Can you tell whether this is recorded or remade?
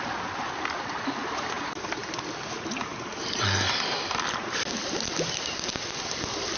recorded